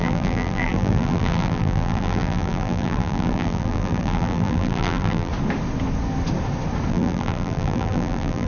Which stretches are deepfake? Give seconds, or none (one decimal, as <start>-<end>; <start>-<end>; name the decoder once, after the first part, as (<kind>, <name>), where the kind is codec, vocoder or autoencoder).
0.0-5.3 (vocoder, BigVGAN v2); 6.9-8.5